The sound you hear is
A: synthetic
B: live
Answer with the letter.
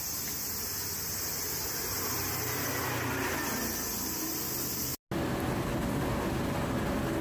B